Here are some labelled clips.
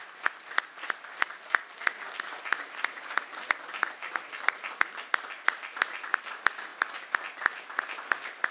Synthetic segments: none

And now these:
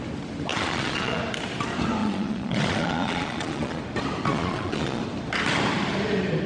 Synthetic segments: 0.5-1.2 (vocoder, Vocos); 2.0-3.8; 4.3-5.0

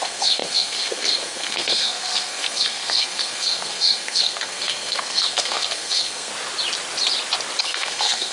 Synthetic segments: 0.0-6.3 (codec, SNAC); 7.6-8.3

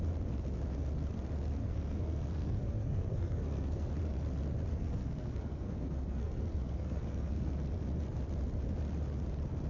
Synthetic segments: 1.6-3.9 (codec, SNAC); 4.7-7.5

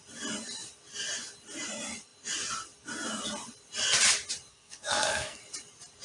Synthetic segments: 4.5-5.4 (codec, SNAC)

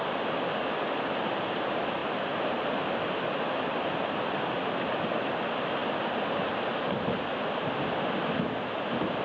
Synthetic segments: 2.0-4.5 (vocoder, BigVGAN v2)

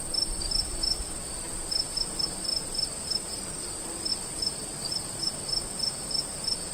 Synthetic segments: 4.1-5.3 (vocoder, BigVGAN v2)

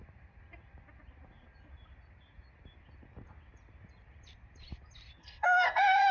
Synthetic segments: 5.2-6.1 (codec, SNAC)